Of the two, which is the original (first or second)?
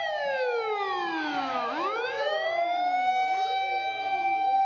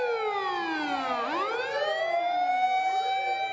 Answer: second